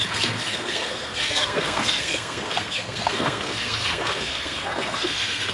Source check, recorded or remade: remade